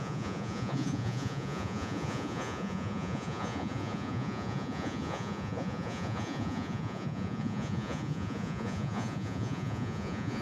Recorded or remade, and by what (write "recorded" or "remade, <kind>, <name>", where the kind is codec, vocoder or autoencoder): remade, vocoder, Vocos